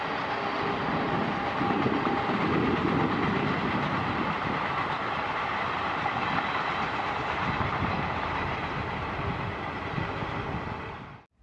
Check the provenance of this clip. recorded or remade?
recorded